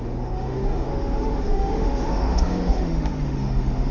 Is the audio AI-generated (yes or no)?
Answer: yes